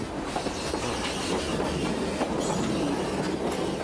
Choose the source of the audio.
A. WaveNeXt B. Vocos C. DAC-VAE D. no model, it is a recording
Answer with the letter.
D